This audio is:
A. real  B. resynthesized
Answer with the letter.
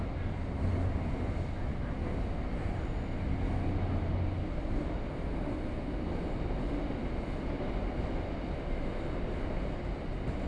A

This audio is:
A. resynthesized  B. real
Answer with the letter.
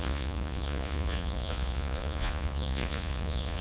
A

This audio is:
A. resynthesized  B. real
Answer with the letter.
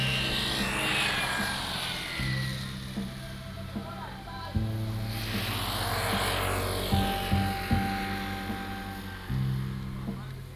B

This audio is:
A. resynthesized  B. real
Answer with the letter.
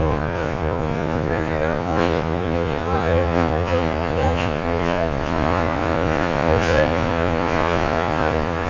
A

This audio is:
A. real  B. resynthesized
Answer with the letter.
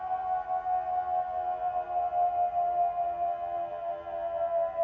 A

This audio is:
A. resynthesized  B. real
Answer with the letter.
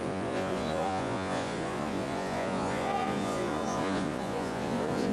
A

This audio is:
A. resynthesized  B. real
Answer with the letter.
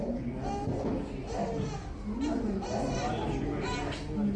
B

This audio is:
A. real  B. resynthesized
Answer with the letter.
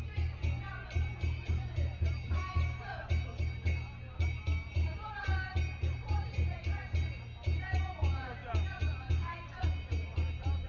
A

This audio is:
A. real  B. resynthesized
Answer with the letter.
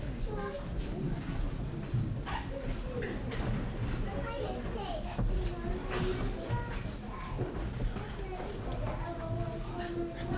A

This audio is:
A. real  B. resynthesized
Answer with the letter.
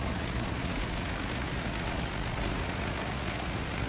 B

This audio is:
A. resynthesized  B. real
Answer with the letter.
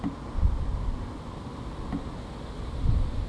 B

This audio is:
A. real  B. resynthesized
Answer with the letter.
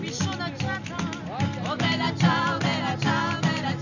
A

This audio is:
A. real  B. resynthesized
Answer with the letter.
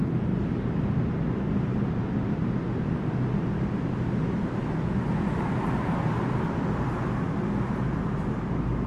A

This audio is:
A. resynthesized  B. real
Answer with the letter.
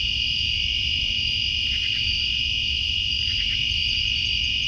A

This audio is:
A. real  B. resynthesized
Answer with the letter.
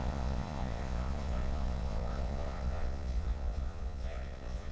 B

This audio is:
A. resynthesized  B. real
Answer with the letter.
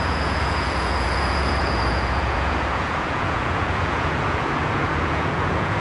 A